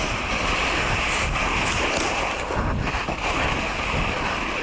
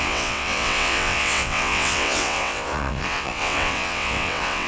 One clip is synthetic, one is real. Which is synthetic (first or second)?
second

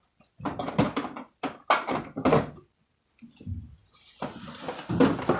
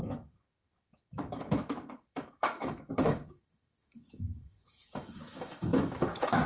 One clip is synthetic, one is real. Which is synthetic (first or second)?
second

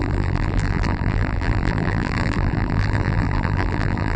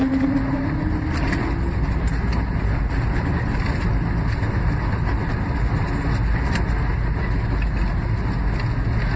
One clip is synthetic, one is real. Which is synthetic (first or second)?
first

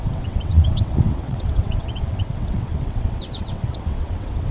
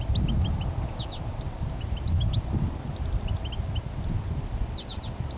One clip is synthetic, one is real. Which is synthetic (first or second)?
first